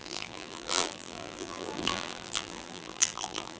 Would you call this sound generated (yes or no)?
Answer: yes